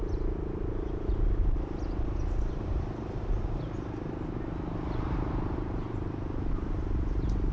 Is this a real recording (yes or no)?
yes